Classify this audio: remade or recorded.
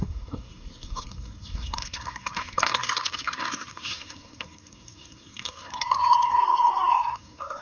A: remade